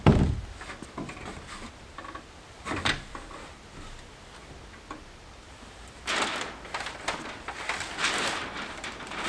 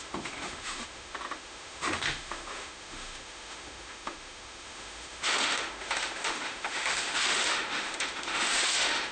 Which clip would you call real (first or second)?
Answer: first